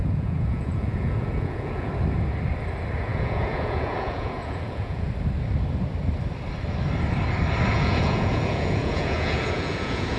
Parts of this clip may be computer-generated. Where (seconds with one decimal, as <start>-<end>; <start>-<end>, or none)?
0.0-1.9; 3.1-5.1; 7.7-10.2